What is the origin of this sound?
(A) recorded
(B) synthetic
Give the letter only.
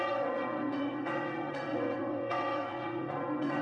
B